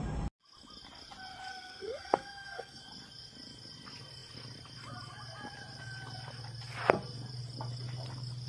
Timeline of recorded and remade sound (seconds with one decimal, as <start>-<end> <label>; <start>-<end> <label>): 0.0-1.5 recorded; 1.5-2.8 remade; 2.8-8.5 recorded